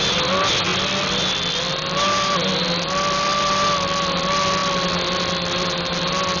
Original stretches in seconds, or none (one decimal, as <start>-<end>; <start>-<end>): 0.0-6.4